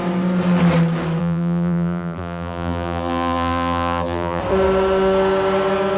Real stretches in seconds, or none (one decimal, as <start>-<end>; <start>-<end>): 0.0-1.2; 4.4-6.0